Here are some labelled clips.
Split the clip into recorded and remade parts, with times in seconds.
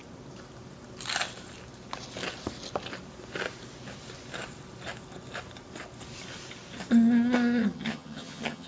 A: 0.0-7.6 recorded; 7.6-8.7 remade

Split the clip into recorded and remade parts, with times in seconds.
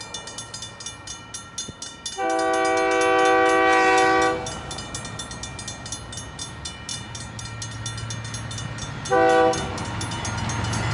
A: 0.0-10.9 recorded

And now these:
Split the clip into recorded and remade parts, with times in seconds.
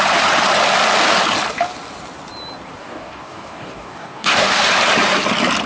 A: 0.0-2.8 recorded; 2.8-4.6 remade; 4.6-5.7 recorded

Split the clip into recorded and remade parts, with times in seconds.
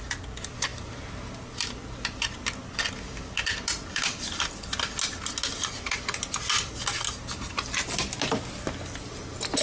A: 0.0-9.6 recorded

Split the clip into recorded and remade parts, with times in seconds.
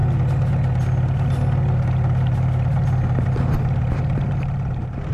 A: 0.0-5.1 recorded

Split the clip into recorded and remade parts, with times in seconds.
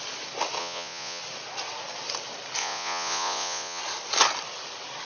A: 0.0-0.6 recorded; 0.6-1.2 remade; 1.2-2.6 recorded; 2.6-3.8 remade; 3.8-5.1 recorded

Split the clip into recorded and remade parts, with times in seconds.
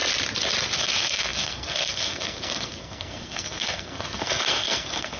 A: 0.0-0.8 recorded; 0.8-5.2 remade